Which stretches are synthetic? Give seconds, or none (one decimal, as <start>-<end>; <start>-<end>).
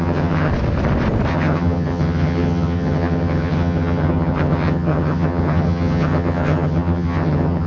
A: 0.0-0.5; 1.3-7.7